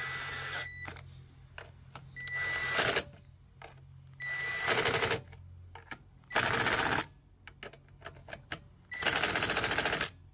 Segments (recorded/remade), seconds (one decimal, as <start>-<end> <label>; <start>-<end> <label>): 0.0-10.3 recorded